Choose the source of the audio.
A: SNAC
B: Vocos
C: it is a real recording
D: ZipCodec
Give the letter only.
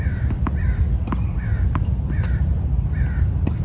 C